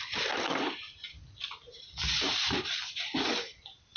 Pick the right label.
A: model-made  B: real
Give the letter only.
B